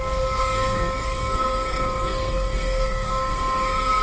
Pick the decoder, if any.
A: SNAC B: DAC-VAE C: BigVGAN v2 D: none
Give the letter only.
A